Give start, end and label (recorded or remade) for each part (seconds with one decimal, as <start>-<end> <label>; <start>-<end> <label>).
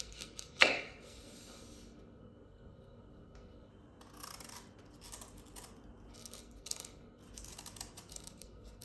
0.0-3.7 remade; 3.7-6.1 recorded; 6.1-7.2 remade; 7.2-8.1 recorded; 8.1-8.8 remade